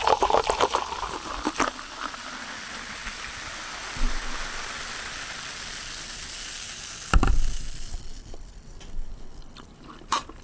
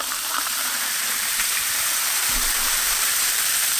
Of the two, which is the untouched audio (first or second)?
first